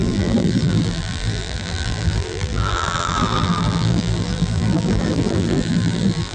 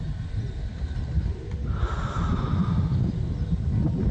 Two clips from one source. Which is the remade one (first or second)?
first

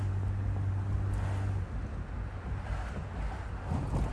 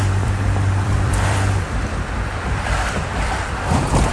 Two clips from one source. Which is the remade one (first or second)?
second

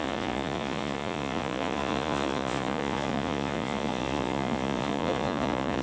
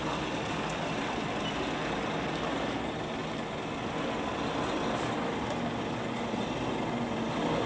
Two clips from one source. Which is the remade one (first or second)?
first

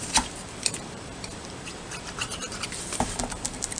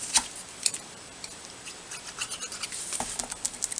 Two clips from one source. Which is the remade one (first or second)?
first